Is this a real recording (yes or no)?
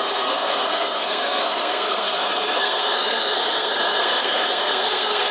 no